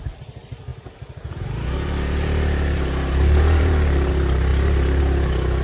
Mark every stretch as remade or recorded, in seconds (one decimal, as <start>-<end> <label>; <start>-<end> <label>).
0.0-0.7 recorded; 0.7-4.1 remade; 4.1-4.5 recorded; 4.5-5.0 remade; 5.0-5.6 recorded